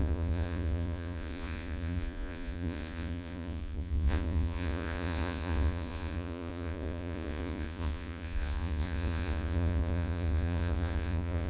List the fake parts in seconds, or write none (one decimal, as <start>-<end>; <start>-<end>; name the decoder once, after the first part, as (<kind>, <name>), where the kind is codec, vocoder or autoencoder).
0.0-11.5 (vocoder, Vocos)